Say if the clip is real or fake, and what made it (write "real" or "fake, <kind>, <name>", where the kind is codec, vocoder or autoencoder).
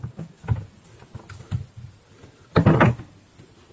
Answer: real